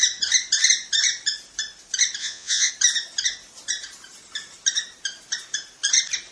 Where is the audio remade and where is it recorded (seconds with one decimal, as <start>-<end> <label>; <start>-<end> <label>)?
0.0-2.2 recorded; 2.2-2.7 remade; 2.7-6.3 recorded